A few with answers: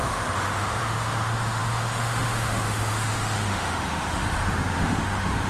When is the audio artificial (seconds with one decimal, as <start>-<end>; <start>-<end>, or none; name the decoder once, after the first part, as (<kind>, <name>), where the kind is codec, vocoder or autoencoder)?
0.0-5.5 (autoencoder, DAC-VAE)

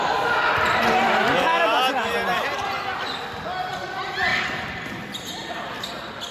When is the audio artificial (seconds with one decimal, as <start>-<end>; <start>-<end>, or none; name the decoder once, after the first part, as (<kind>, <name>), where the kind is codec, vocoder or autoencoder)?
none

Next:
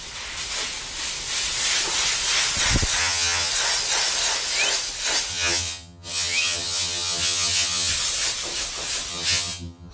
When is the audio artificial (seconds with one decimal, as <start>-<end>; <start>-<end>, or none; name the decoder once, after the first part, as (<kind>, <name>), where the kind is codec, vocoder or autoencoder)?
3.0-3.5 (vocoder, HiFi-GAN); 5.3-7.9; 9.1-9.9

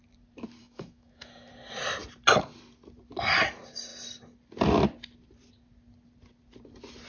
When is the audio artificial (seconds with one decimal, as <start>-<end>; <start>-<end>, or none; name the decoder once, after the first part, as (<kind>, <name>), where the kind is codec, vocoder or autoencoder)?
0.6-1.5 (autoencoder, DAC-VAE)